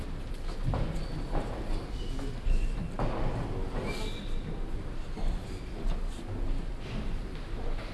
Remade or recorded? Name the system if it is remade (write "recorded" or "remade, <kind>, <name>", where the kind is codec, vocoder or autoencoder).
recorded